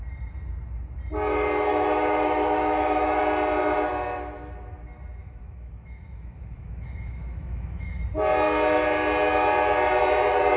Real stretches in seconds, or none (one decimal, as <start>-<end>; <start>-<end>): 0.0-1.7; 3.2-5.2; 8.0-10.6